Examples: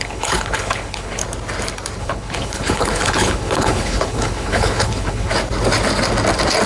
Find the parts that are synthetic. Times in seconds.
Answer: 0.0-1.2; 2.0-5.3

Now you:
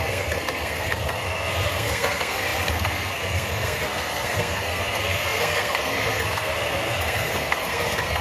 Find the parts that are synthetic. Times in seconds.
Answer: 0.0-8.2

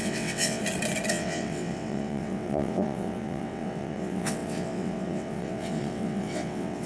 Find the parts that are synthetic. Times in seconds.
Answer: 0.0-0.6; 1.1-6.9